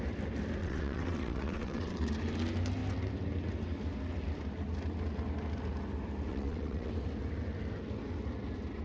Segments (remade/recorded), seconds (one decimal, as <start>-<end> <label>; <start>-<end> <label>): 0.0-0.6 recorded; 0.6-2.1 remade; 2.1-6.3 recorded; 6.3-6.9 remade; 6.9-8.8 recorded